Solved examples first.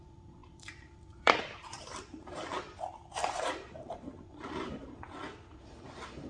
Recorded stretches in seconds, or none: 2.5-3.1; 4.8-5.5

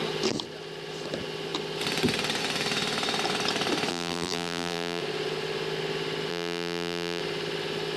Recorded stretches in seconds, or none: 0.0-3.9; 5.0-6.3; 7.2-8.0

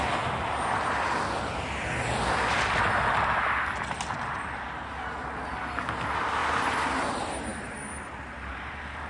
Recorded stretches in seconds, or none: 0.0-7.5; 8.7-9.1

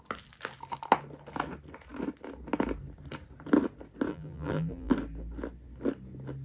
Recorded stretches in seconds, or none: 0.0-4.1; 4.9-6.4